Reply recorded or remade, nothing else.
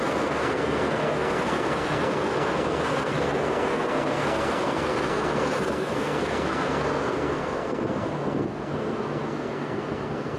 remade